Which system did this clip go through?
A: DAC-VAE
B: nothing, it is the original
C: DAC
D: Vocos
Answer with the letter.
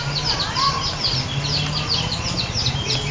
B